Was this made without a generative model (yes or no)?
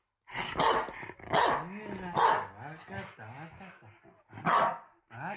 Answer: yes